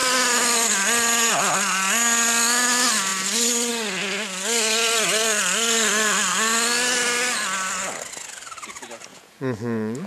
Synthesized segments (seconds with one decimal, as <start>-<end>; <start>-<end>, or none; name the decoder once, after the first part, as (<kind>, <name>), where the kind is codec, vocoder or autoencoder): 9.1-10.1 (vocoder, Vocos)

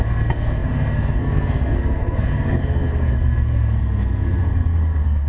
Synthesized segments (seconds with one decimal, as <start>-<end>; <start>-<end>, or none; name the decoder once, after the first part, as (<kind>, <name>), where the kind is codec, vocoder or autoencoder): 0.0-5.3 (codec, SNAC)

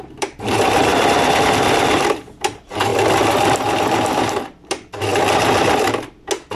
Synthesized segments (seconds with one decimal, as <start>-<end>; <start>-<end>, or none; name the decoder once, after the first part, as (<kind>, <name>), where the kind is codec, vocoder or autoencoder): 0.0-0.9 (vocoder, BigVGAN v2); 1.4-2.9; 4.2-5.1

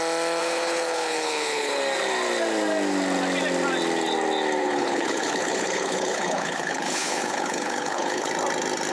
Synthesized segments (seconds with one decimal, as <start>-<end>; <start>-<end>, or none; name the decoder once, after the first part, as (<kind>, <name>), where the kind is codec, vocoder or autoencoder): 0.4-1.8 (codec, HILCodec); 4.6-8.3

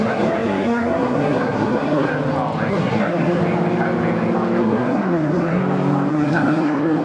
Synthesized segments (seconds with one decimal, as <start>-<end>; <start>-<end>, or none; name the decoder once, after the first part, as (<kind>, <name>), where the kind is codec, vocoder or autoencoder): 0.0-2.1 (codec, SNAC); 2.7-3.4; 4.6-5.6; 6.1-7.0